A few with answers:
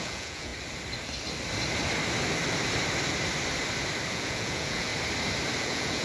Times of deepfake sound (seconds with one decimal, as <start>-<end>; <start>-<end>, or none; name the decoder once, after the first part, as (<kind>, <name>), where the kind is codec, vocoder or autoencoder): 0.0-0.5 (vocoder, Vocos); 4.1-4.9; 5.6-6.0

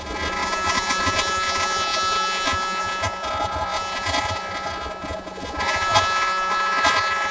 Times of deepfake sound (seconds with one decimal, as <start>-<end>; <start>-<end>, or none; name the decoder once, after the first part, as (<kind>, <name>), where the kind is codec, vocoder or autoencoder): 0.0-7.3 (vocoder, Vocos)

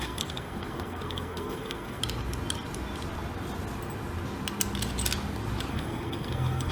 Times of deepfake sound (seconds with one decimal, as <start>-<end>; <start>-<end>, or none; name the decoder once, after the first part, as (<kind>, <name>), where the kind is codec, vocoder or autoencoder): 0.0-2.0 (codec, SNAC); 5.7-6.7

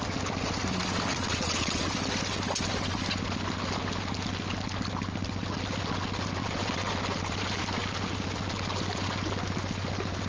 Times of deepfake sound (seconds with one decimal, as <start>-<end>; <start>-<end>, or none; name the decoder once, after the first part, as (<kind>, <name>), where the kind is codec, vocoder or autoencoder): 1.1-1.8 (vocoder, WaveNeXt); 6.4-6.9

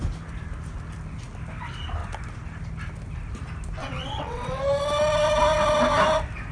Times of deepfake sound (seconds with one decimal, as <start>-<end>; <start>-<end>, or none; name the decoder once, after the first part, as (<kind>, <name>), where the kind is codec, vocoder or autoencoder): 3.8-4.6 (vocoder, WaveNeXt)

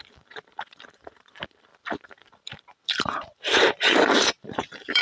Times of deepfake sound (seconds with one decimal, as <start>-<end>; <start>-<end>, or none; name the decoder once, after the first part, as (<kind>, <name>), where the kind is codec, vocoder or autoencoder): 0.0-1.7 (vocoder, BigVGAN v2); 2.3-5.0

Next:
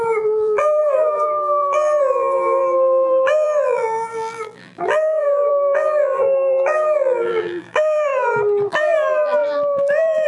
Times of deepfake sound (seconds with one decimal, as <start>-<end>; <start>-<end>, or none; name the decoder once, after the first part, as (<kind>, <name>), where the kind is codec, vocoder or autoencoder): 0.0-8.1 (vocoder, BigVGAN v2); 8.7-10.3